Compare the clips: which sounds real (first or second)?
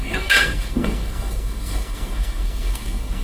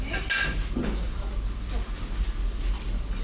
second